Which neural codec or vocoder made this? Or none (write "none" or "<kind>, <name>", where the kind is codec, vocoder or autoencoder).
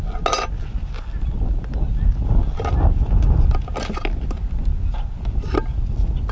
none